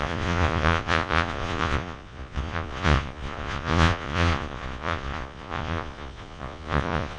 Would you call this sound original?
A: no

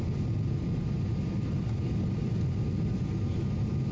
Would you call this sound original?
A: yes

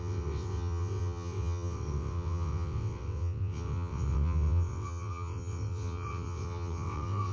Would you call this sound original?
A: no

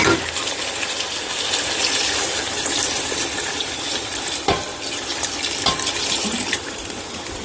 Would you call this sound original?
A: yes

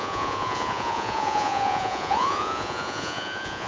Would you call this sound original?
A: no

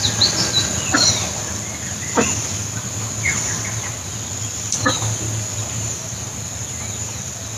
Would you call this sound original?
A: yes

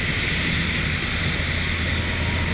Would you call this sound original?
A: yes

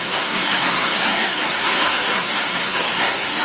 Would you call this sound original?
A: no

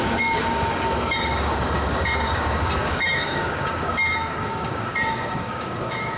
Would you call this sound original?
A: no